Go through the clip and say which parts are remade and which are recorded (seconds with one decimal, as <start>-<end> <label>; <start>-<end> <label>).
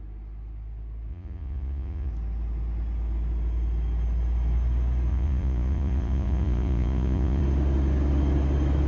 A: 0.0-1.1 recorded; 1.1-2.1 remade; 2.1-5.1 recorded; 5.1-7.4 remade; 7.4-8.9 recorded